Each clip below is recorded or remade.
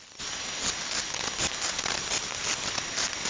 recorded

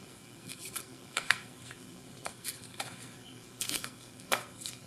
remade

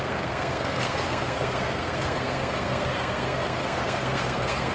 remade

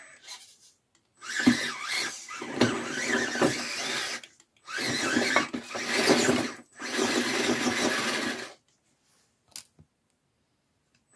recorded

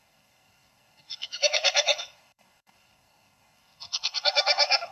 remade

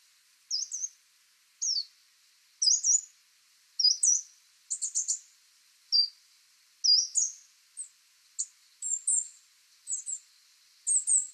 recorded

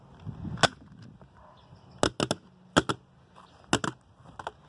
recorded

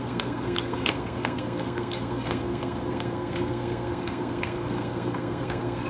remade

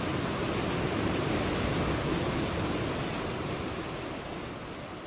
recorded